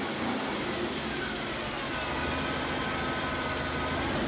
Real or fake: real